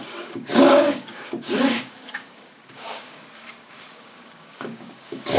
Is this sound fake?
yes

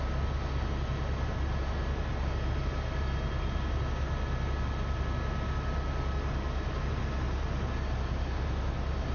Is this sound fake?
no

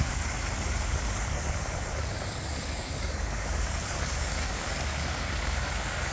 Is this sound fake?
yes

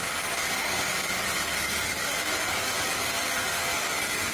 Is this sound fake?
yes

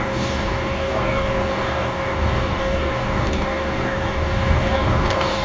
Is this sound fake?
yes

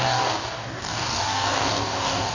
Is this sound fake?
yes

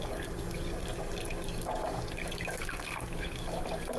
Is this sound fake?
yes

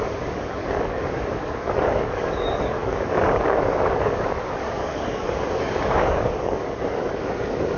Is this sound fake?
yes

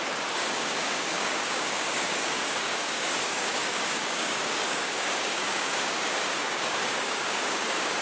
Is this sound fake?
yes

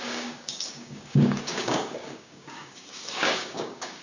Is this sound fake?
yes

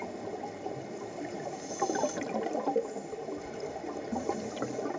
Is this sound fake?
no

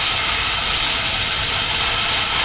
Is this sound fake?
no